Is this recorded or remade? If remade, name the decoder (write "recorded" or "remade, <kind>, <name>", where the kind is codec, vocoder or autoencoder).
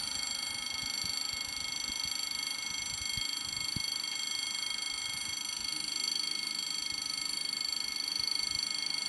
recorded